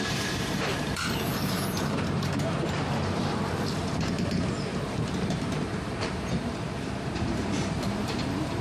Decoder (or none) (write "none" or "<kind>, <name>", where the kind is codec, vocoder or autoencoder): vocoder, BigVGAN v2